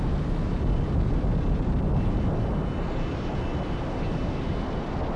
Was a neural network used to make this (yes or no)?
yes